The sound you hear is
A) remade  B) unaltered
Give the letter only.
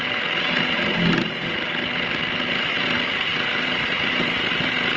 B